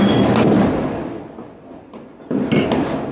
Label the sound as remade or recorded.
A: recorded